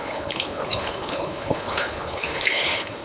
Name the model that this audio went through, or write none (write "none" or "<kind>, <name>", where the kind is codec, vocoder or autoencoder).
codec, HILCodec